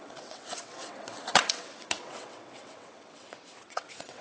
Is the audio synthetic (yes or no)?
yes